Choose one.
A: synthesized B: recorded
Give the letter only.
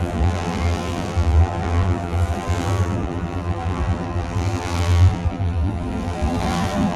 A